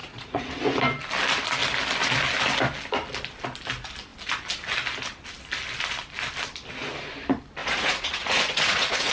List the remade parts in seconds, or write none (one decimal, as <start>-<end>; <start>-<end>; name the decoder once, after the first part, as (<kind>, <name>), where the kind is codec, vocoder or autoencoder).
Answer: 0.0-0.5 (vocoder, Vocos); 7.6-9.1